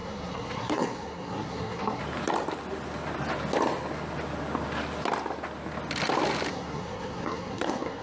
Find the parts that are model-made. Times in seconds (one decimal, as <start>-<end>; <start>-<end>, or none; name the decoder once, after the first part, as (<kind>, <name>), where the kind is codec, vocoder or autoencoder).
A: 0.0-2.0 (codec, SNAC); 6.5-8.0